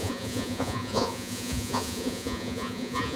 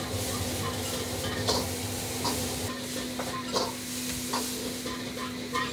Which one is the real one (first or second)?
second